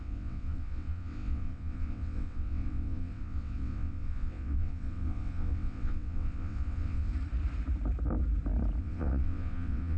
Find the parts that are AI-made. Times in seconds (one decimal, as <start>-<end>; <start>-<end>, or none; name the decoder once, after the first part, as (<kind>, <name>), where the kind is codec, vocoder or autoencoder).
0.0-7.1 (vocoder, WaveNeXt); 8.8-10.0